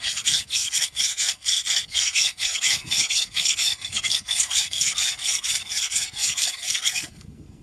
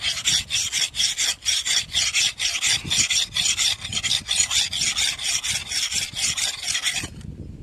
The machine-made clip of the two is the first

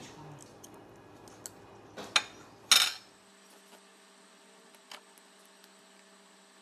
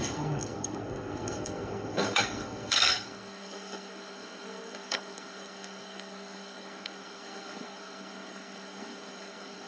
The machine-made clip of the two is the second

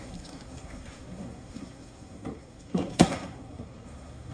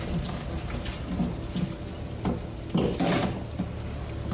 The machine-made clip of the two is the first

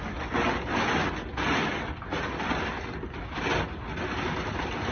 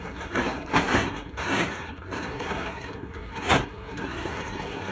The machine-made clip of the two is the second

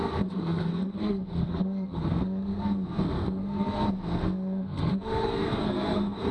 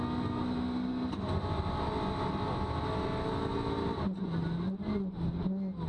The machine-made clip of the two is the first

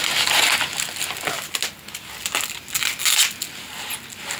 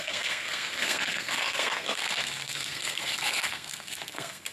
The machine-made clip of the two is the second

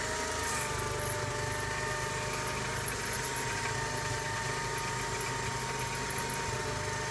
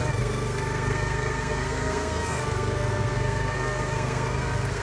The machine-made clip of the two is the second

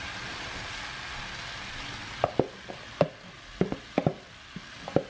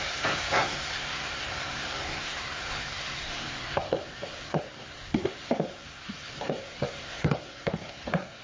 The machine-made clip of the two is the second